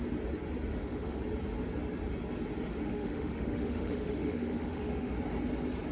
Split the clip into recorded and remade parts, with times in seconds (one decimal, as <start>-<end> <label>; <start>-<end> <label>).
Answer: 0.0-0.7 recorded; 0.7-1.2 remade; 1.2-2.8 recorded; 2.8-5.1 remade; 5.1-5.9 recorded